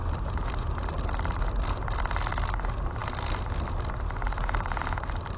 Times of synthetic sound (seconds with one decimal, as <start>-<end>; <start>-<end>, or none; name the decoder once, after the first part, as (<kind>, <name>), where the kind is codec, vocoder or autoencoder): none